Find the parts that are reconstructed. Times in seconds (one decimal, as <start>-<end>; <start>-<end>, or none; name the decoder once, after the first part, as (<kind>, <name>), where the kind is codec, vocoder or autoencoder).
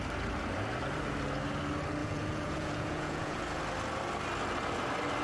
2.0-3.6 (vocoder, Vocos)